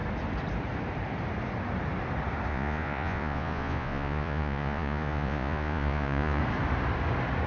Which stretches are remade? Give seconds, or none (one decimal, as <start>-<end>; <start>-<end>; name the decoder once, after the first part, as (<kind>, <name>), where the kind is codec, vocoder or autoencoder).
2.5-6.4 (vocoder, Vocos)